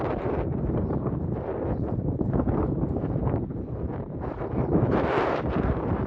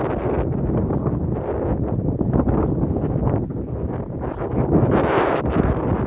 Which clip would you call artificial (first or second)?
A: first